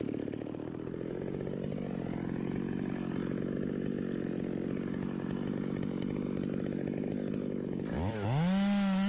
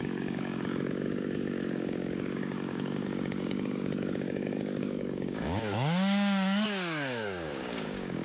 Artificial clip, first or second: second